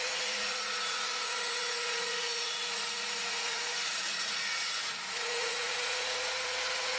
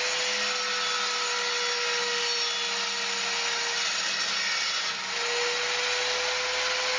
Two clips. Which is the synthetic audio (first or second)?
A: first